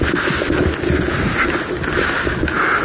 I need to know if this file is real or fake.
real